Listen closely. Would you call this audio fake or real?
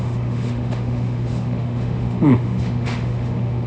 fake